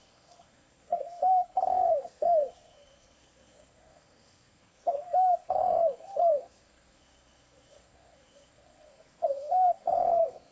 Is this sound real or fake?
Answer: fake